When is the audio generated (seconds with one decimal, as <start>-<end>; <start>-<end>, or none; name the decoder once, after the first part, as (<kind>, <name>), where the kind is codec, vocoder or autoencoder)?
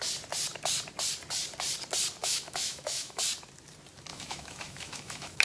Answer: 2.2-3.2 (autoencoder, DAC-VAE); 4.1-5.4